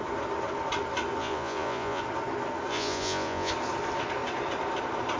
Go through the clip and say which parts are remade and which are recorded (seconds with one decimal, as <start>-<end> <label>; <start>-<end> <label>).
0.0-1.2 recorded; 1.2-2.0 remade; 2.0-2.7 recorded; 2.7-3.5 remade; 3.5-5.2 recorded